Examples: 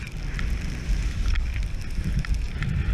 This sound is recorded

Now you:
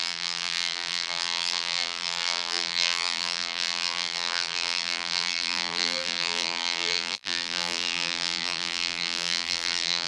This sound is remade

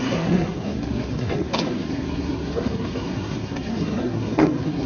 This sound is remade